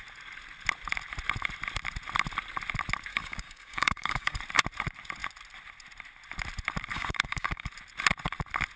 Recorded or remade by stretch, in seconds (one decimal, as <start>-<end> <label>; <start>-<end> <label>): 0.0-3.1 recorded; 3.1-4.4 remade; 4.4-6.9 recorded; 6.9-7.7 remade; 7.7-8.8 recorded